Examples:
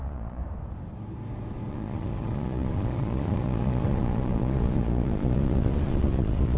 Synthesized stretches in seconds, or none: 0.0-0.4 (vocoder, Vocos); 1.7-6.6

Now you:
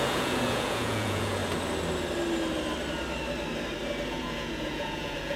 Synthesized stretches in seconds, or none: 0.0-1.4 (vocoder, Vocos); 4.1-5.4

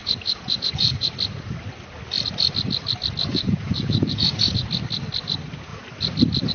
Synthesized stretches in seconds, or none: 0.0-1.1 (vocoder, Vocos); 3.3-4.7

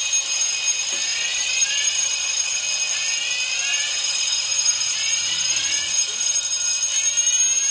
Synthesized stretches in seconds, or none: 1.1-2.6 (vocoder, Vocos); 3.7-6.4

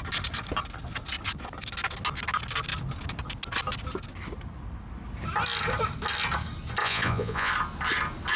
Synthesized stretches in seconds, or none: 6.8-7.5 (vocoder, Vocos)